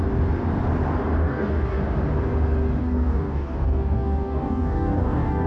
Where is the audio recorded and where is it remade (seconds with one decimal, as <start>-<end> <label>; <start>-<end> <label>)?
0.0-1.2 recorded; 1.2-1.8 remade; 1.8-2.8 recorded; 2.8-5.5 remade